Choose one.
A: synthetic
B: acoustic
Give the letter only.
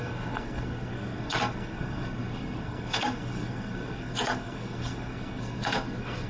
A